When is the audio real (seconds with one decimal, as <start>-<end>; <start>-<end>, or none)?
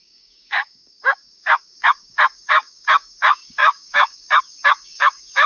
none